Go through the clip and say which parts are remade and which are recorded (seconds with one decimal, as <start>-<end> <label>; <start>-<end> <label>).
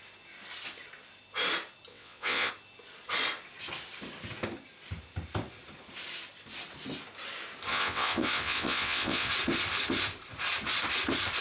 0.0-1.9 recorded; 1.9-2.5 remade; 2.5-7.7 recorded; 7.7-9.3 remade; 9.3-11.4 recorded